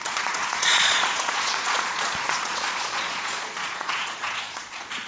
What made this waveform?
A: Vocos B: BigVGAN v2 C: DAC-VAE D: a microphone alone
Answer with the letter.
A